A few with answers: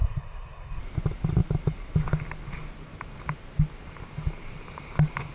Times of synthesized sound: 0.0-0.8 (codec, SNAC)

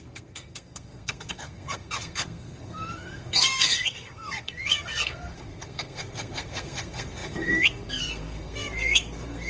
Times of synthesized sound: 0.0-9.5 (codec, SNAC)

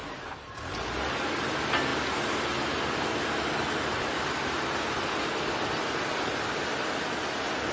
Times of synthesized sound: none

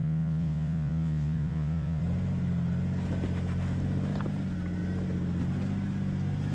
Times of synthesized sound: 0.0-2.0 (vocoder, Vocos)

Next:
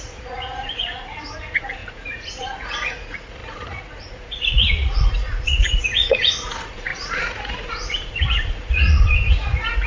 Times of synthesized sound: 0.0-9.9 (vocoder, Vocos)

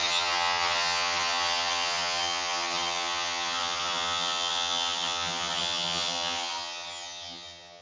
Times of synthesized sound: 0.0-7.8 (vocoder, HiFi-GAN)

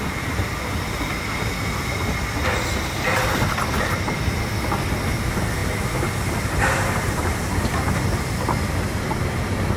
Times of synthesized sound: none

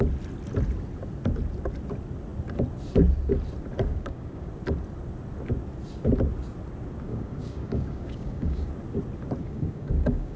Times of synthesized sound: 3.9-4.5 (codec, DAC); 7.1-8.7; 9.4-10.4